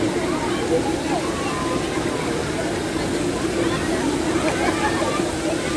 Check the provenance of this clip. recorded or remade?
recorded